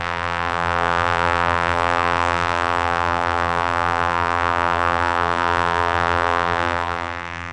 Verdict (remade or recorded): remade